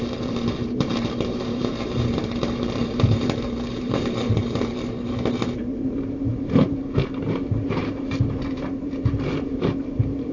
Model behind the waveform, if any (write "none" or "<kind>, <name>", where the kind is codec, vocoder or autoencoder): vocoder, BigVGAN v2